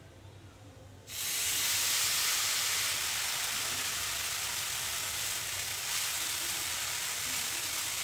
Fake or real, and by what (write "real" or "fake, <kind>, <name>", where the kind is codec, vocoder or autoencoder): real